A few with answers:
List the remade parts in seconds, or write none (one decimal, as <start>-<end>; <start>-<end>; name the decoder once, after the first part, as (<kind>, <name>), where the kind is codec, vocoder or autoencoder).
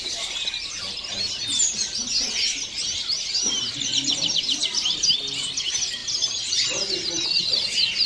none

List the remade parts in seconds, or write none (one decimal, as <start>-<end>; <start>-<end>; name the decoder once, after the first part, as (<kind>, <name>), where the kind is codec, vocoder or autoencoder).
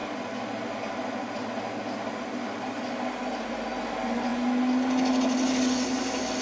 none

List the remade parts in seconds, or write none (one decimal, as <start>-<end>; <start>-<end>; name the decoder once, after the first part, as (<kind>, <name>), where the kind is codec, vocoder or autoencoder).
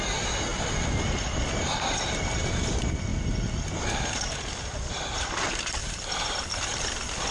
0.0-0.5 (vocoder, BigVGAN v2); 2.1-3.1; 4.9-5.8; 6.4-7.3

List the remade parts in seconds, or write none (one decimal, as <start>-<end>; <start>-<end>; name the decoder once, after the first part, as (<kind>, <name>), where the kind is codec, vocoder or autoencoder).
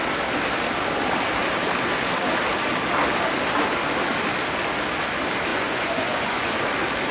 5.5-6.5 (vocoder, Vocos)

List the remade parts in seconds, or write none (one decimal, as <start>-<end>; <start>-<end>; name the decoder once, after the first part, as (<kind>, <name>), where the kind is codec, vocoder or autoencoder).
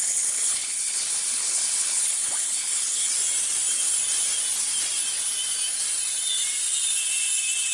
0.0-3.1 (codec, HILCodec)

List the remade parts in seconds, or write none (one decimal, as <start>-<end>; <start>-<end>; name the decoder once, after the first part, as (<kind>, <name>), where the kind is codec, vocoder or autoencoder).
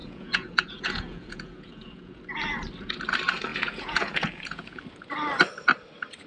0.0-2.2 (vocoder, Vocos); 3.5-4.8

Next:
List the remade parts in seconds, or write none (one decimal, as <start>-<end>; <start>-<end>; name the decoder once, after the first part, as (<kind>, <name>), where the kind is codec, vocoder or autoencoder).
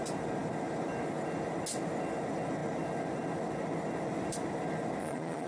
5.0-5.5 (vocoder, Vocos)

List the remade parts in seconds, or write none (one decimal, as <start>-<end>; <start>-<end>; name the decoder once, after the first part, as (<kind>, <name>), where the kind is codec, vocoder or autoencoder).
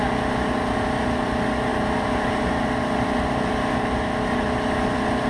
none